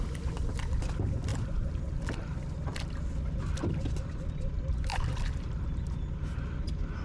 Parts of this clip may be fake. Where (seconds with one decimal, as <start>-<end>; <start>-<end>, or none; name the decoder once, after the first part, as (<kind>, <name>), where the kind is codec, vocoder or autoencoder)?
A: 1.3-2.7 (vocoder, BigVGAN v2); 4.9-5.6